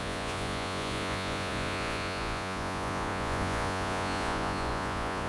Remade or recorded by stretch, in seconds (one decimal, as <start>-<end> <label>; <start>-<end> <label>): 0.0-5.3 remade